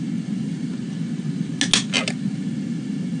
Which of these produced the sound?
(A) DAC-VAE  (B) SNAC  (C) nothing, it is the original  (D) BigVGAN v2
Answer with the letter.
C